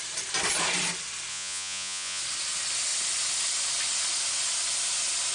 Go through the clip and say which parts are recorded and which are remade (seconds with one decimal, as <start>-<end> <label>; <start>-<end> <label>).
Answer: 0.0-1.3 recorded; 1.3-2.2 remade; 2.2-5.3 recorded